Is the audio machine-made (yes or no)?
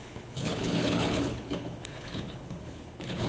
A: yes